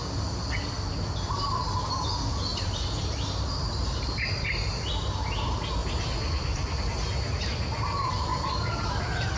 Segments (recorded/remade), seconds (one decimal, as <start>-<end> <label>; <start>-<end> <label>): 0.0-2.5 recorded; 2.5-4.9 remade; 4.9-5.8 recorded; 5.8-6.8 remade; 6.8-8.3 recorded; 8.3-9.4 remade